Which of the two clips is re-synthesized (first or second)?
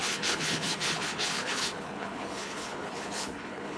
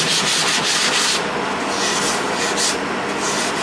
first